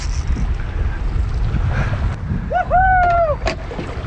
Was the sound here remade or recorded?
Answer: recorded